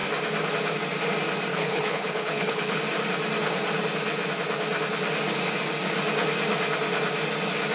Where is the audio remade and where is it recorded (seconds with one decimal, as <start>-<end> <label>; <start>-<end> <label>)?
0.0-1.5 recorded; 1.5-2.8 remade; 2.8-7.7 recorded